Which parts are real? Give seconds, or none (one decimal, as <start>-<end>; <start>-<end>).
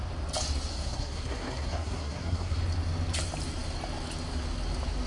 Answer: 0.0-0.7; 2.6-5.1